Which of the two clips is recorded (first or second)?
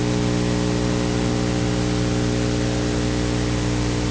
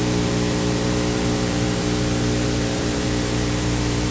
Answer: first